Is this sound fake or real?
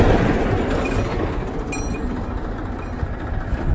real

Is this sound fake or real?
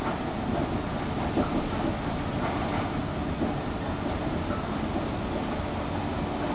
real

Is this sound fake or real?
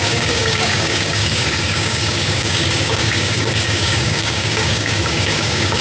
fake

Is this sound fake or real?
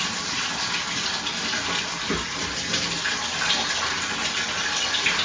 real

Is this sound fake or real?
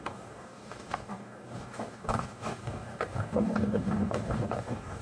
fake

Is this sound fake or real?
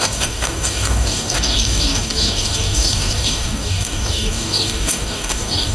fake